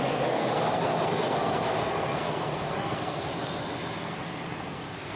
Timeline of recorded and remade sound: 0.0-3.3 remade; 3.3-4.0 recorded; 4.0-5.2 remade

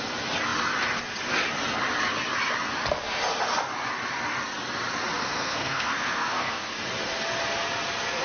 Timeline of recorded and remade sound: 0.0-5.2 recorded; 5.2-6.7 remade; 6.7-8.2 recorded

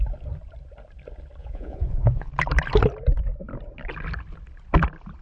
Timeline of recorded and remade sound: 0.0-1.4 recorded; 1.4-2.3 remade; 2.3-5.2 recorded

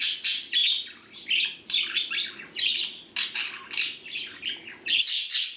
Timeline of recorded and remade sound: 0.0-5.6 recorded

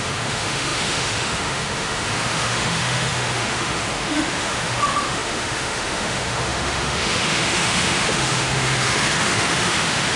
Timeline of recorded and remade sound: 0.0-10.2 remade